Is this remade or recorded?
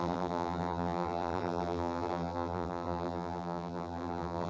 remade